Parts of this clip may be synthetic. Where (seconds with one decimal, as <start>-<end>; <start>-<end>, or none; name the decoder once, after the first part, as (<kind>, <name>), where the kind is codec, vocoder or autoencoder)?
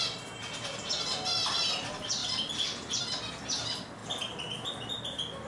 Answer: none